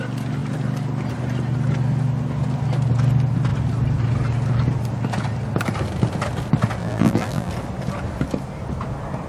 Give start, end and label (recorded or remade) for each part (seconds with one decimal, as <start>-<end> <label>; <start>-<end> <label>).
0.0-6.8 recorded; 6.8-7.5 remade; 7.5-9.3 recorded